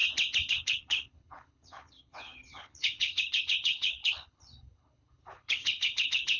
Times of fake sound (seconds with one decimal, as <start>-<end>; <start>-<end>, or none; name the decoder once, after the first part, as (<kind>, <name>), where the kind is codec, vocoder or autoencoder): 0.5-6.4 (codec, HILCodec)